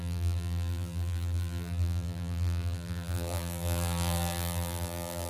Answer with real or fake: fake